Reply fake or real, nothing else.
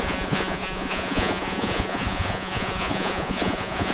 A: fake